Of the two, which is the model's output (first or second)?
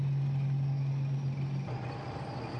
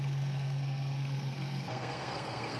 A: second